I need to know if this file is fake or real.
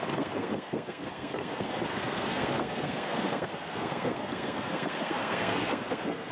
fake